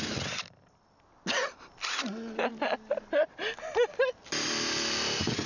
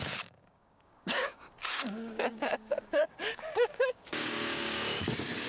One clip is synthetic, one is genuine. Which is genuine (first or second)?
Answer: first